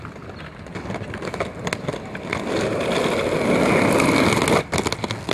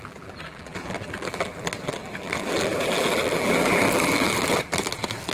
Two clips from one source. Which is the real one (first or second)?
first